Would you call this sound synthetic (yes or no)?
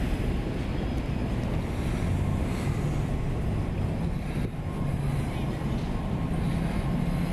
no